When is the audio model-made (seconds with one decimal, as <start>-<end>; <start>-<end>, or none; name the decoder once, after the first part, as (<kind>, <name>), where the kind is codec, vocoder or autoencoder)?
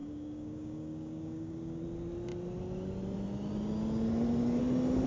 0.0-1.8 (codec, DAC)